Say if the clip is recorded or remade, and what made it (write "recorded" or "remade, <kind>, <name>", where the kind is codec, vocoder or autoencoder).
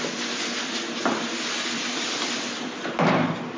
recorded